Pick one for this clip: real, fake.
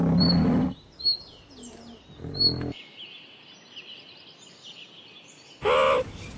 real